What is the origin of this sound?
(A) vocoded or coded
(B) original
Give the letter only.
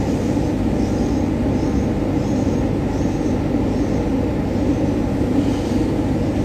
B